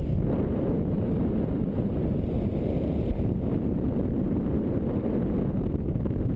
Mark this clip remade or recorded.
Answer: recorded